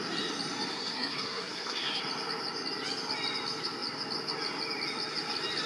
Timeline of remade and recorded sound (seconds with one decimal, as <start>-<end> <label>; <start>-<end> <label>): 0.0-0.7 recorded; 0.7-2.0 remade; 2.0-5.7 recorded

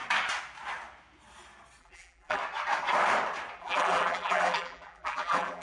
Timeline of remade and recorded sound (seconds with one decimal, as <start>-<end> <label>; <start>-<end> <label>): 0.0-1.8 recorded; 1.8-2.4 remade; 2.4-3.6 recorded; 3.6-5.6 remade

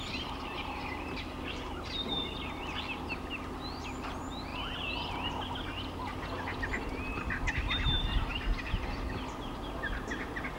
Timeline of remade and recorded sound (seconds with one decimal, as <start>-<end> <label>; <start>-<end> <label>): 0.0-10.6 recorded